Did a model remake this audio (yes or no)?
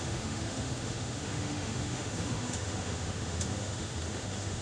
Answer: yes